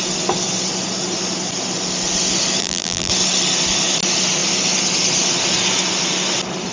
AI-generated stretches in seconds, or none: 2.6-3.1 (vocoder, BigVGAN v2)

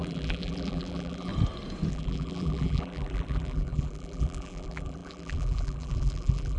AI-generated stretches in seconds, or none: 0.0-1.3 (vocoder, BigVGAN v2); 1.9-6.6

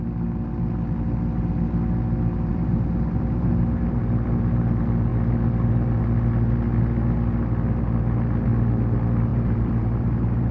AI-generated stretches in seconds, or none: 2.5-4.0 (vocoder, BigVGAN v2); 9.3-10.5

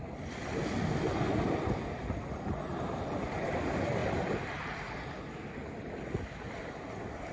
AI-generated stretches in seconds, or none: none

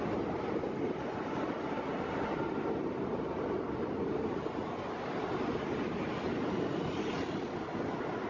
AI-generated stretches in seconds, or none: none

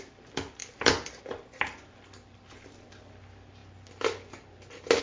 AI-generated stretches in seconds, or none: 0.0-3.6 (vocoder, BigVGAN v2)